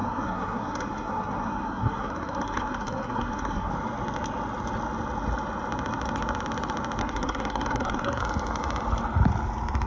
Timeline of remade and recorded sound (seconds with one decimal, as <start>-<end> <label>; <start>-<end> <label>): 0.0-3.7 remade; 3.7-7.0 recorded; 7.0-8.2 remade; 8.2-9.9 recorded